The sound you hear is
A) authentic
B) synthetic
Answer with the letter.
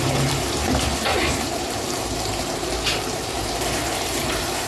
B